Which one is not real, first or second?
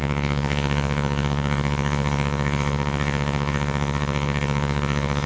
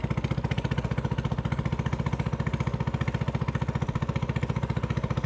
first